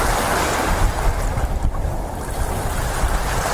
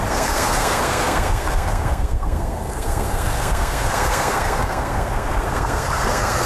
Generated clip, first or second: second